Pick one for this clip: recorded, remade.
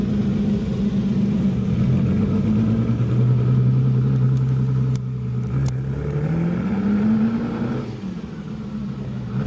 recorded